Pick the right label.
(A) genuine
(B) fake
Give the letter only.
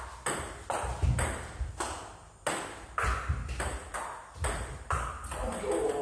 A